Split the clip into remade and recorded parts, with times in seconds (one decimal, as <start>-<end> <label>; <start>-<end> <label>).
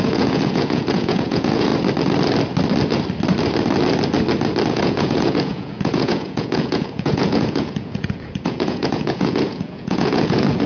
0.0-1.7 remade; 1.7-4.7 recorded; 4.7-10.7 remade